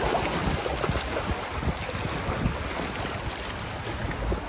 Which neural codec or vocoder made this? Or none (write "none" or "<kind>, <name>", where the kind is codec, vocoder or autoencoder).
none